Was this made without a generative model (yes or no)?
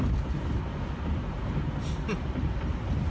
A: yes